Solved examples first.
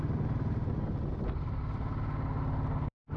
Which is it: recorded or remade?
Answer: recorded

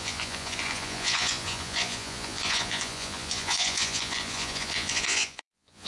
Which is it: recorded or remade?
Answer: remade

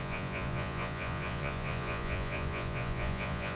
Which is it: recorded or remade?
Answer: remade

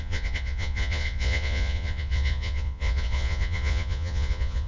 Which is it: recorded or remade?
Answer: remade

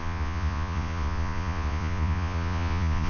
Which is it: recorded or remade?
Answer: remade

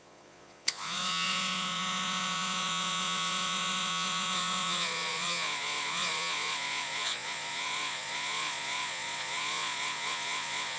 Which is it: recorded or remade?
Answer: remade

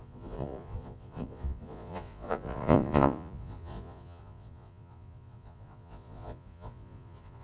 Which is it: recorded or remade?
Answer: remade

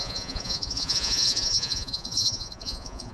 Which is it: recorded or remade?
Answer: remade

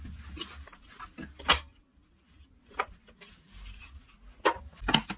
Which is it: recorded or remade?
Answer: recorded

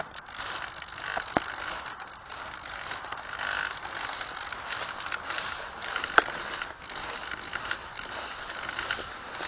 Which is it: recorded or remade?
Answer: recorded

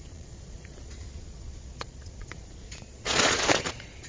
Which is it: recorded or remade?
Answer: remade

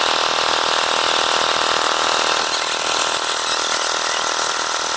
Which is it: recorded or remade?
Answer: recorded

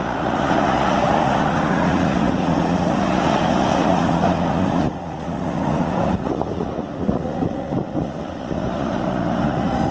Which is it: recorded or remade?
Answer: remade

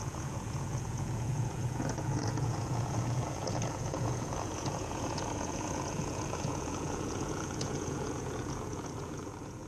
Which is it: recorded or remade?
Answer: remade